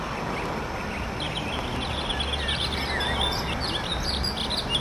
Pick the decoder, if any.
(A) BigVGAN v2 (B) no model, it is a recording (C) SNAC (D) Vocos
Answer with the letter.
B